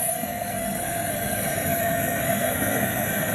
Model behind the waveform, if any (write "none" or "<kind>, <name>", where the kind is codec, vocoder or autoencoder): codec, SNAC